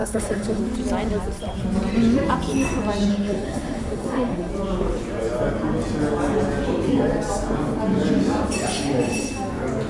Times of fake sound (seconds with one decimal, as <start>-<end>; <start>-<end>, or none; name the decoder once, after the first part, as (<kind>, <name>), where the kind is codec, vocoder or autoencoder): 0.0-0.6 (codec, SNAC); 3.1-4.5